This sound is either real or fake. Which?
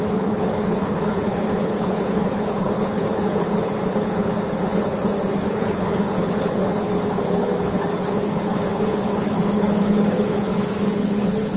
fake